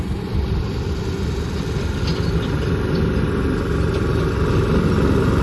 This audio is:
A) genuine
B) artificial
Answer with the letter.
A